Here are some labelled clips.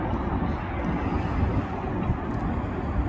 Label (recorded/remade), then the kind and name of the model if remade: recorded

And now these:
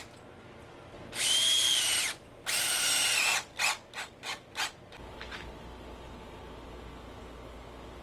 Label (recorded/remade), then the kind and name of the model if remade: recorded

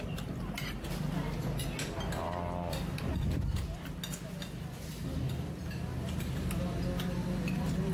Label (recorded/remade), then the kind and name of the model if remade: recorded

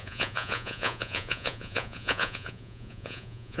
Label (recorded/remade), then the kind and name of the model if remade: remade, vocoder, Vocos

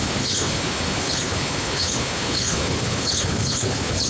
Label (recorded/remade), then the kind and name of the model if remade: remade, codec, HILCodec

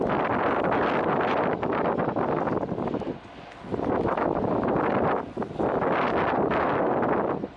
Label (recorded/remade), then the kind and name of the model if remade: recorded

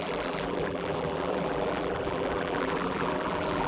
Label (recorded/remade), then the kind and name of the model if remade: remade, vocoder, BigVGAN v2